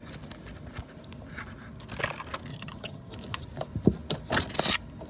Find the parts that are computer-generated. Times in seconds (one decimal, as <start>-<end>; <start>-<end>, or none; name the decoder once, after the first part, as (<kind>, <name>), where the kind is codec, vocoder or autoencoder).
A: 2.5-3.1 (vocoder, HiFi-GAN)